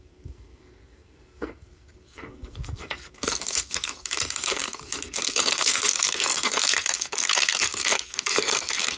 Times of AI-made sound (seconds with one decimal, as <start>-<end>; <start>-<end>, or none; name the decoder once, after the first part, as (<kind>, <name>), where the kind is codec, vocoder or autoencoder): 0.0-9.0 (codec, SNAC)